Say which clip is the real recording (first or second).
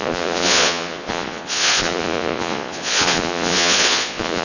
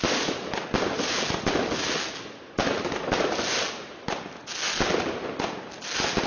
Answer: second